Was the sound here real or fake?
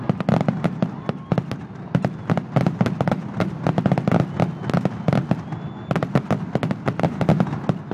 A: real